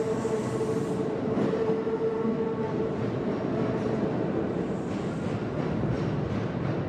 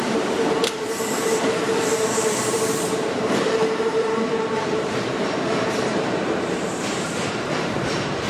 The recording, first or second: first